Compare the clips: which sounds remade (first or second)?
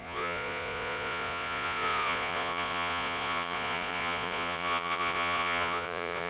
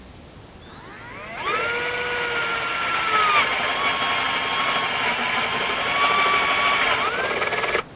first